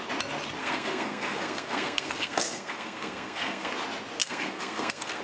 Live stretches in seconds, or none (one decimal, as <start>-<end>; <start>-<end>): 0.0-0.6; 3.7-4.2